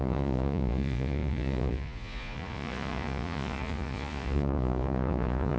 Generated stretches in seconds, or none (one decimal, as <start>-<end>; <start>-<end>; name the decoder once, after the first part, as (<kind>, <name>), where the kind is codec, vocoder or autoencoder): 0.0-5.6 (vocoder, Vocos)